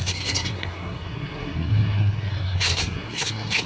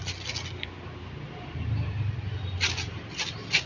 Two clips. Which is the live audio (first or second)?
second